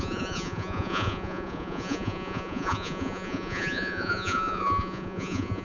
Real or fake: fake